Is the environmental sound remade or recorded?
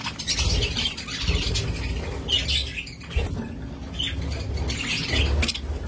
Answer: recorded